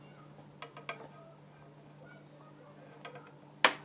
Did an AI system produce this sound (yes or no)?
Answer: no